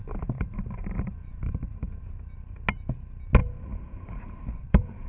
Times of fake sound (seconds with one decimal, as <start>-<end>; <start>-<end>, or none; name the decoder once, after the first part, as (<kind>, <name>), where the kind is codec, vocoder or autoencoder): 0.0-2.0 (vocoder, BigVGAN v2); 3.4-5.1